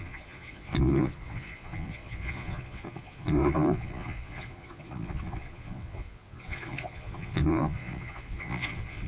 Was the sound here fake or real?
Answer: fake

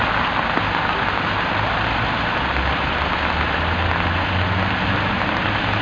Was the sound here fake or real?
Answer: real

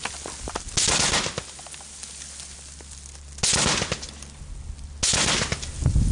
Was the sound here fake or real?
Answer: real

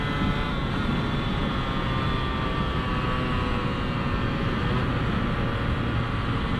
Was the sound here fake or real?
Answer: real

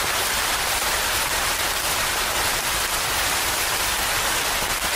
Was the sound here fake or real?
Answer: real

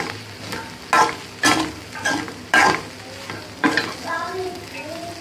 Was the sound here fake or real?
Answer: real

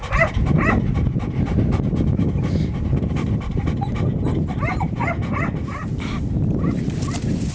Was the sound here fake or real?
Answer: real